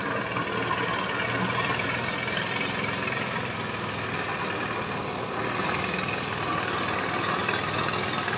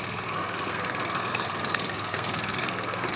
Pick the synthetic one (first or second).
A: second